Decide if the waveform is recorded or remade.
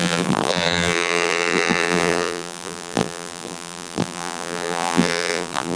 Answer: remade